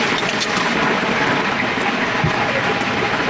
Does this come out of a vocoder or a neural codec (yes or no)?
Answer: no